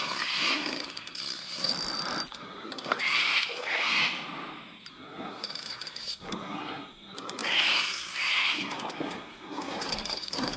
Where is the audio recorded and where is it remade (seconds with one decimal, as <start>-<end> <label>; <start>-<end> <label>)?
0.0-1.7 remade; 1.7-2.3 recorded; 2.3-4.0 remade; 4.0-4.9 recorded; 4.9-10.6 remade